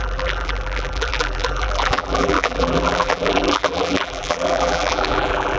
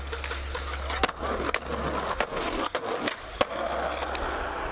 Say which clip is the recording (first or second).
second